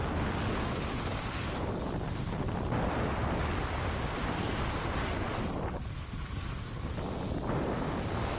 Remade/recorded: recorded